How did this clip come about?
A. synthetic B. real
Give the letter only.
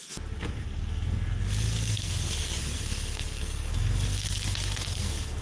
A